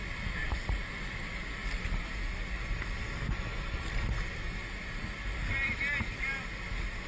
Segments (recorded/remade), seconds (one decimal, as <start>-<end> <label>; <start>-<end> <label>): 0.0-0.4 recorded; 0.4-0.9 remade; 0.9-7.1 recorded